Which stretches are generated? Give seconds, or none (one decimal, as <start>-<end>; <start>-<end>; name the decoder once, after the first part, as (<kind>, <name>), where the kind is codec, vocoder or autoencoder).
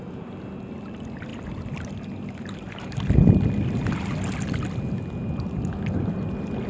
none